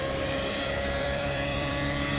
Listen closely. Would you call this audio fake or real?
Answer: fake